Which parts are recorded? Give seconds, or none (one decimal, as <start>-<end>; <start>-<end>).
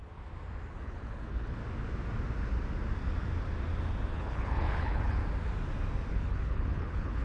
0.0-0.7; 1.6-4.1; 5.2-6.1